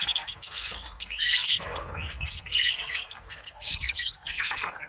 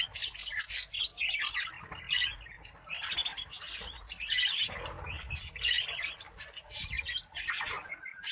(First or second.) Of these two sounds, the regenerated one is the first